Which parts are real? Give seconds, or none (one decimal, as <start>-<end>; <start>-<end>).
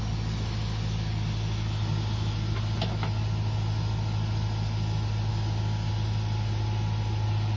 0.0-5.3; 5.9-7.6